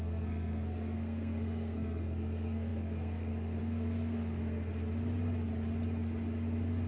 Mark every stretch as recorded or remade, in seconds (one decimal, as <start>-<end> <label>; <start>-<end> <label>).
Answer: 0.0-4.7 remade; 4.7-6.9 recorded